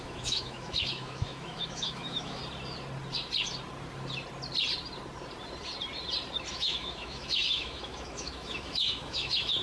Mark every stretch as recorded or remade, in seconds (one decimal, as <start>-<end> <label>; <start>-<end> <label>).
0.0-2.4 remade; 2.4-6.5 recorded; 6.5-9.6 remade